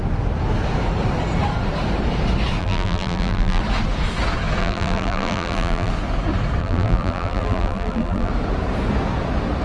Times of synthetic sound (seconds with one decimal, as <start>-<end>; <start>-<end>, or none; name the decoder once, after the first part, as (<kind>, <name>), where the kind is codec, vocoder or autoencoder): 2.6-3.6 (vocoder, BigVGAN v2); 4.6-5.9; 6.6-8.3